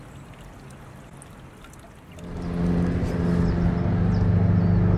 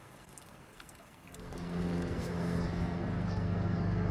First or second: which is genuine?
first